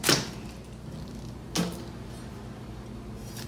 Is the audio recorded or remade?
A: recorded